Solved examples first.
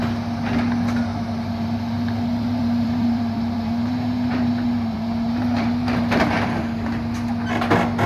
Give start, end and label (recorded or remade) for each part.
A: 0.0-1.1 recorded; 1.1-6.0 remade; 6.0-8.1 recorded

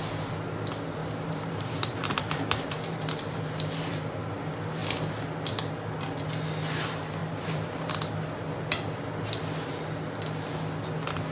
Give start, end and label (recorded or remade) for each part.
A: 0.0-1.0 recorded; 1.0-4.2 remade; 4.2-7.2 recorded; 7.2-7.9 remade; 7.9-11.3 recorded

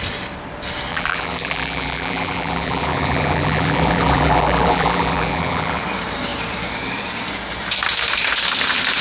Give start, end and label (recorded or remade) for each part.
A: 0.0-0.9 recorded; 0.9-5.8 remade; 5.8-9.0 recorded

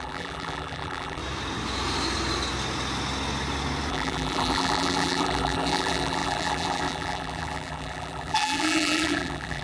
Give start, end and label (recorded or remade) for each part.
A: 0.0-1.2 remade; 1.2-3.9 recorded; 3.9-9.6 remade

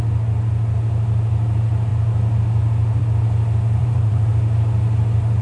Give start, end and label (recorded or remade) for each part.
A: 0.0-3.8 recorded; 3.8-4.3 remade; 4.3-5.4 recorded

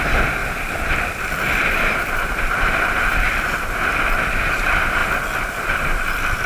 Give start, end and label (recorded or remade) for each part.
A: 0.0-5.0 remade; 5.0-5.9 recorded; 5.9-6.5 remade

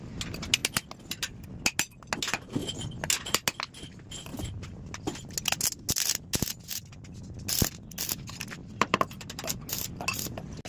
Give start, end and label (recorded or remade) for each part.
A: 0.0-8.6 recorded; 8.6-9.5 remade; 9.5-10.7 recorded